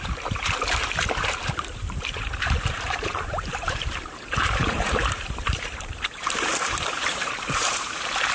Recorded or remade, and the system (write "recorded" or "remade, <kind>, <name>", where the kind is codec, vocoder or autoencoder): remade, vocoder, BigVGAN v2